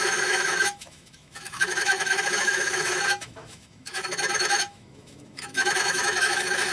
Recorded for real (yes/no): no